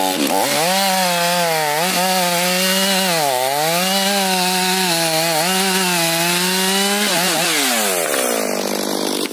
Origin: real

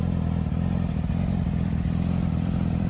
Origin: fake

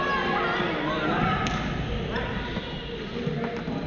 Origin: real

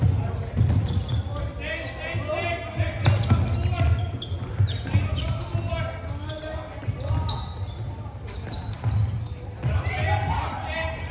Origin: real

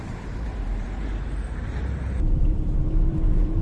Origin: fake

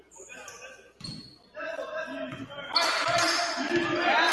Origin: real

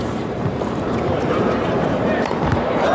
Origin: fake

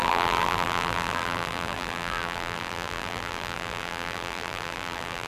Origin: fake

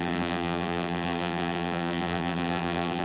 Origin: fake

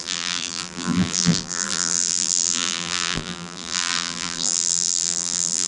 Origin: fake